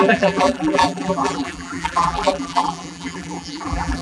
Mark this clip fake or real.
fake